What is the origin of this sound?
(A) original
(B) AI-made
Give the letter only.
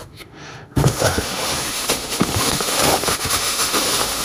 B